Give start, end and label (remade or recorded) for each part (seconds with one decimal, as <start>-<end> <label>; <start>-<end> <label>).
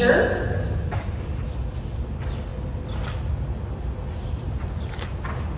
0.0-5.6 recorded